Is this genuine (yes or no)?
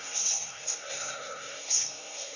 no